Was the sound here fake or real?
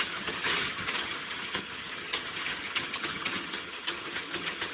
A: fake